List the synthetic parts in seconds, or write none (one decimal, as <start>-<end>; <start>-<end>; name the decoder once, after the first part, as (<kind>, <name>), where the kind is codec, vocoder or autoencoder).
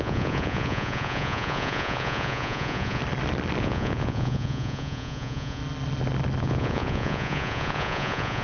0.0-3.0 (vocoder, Vocos); 3.6-5.6; 6.4-8.4